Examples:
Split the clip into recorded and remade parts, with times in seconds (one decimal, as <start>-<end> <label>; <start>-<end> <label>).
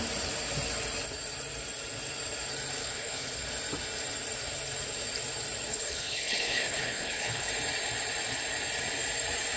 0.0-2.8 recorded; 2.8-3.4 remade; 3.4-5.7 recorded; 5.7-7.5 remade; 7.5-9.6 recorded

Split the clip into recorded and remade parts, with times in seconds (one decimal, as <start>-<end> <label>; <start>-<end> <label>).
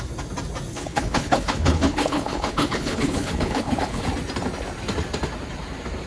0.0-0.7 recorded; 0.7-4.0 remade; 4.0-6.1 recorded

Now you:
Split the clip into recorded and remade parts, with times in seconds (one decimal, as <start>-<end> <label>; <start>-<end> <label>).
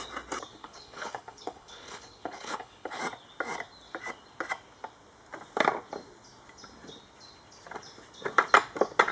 0.0-0.6 recorded; 0.6-3.0 remade; 3.0-9.1 recorded